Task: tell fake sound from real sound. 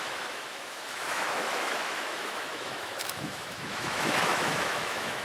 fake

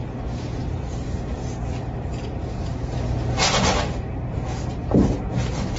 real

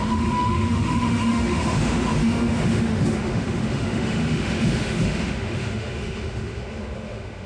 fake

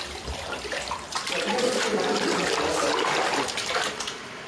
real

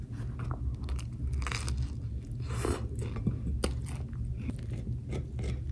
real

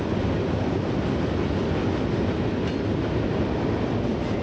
real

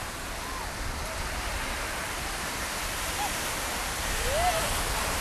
real